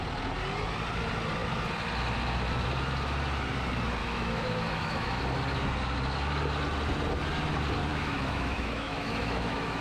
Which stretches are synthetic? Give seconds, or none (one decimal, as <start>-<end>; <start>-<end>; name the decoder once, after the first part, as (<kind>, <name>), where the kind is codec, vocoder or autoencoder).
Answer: 4.0-5.2 (autoencoder, DAC-VAE); 7.9-9.8

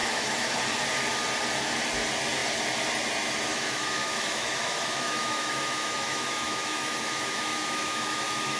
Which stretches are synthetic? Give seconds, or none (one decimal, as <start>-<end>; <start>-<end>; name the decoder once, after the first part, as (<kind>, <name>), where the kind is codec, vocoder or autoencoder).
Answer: 0.0-0.6 (autoencoder, DAC-VAE); 3.5-8.6